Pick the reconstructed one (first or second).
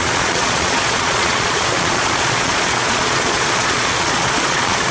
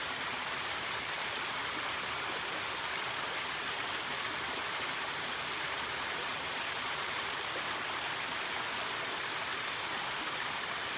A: first